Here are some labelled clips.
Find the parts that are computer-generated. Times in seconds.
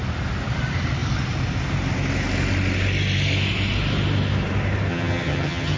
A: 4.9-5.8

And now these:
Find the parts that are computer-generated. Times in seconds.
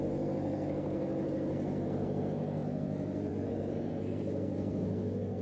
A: 0.0-5.4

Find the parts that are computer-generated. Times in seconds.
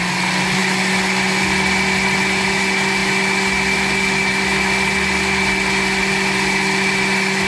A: none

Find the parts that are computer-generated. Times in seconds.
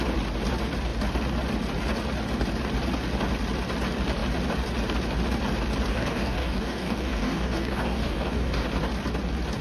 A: 5.9-8.7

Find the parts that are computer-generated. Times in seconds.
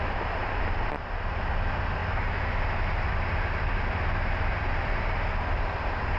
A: 0.4-1.1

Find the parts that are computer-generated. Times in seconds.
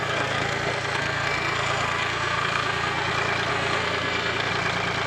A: 0.0-3.1; 3.5-4.5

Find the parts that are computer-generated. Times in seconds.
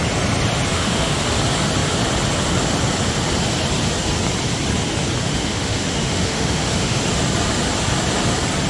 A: 0.7-1.4; 5.2-7.0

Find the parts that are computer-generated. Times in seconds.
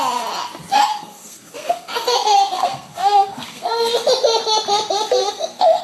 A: 0.9-3.9; 5.2-5.8